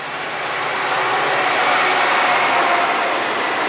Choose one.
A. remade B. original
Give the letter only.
B